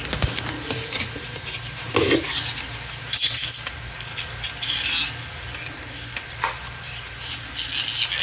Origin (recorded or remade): recorded